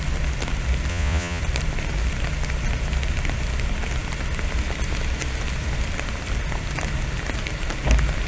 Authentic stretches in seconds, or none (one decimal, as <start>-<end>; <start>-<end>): 0.0-0.9; 1.4-8.3